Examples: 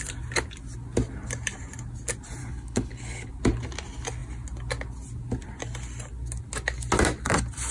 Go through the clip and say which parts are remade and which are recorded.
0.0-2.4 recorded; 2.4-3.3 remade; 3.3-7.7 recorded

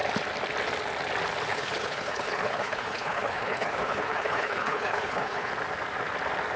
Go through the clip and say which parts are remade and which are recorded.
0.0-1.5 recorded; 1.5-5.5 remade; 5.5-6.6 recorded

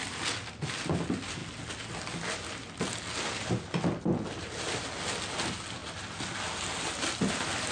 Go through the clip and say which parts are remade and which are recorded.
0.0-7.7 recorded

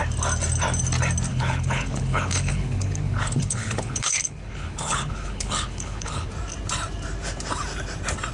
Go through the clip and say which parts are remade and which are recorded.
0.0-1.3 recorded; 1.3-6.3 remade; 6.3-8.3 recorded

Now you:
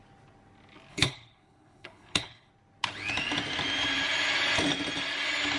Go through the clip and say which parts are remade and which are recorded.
0.0-0.9 recorded; 0.9-2.5 remade; 2.5-5.6 recorded